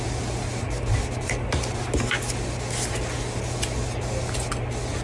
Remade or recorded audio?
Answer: recorded